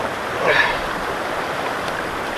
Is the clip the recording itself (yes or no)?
no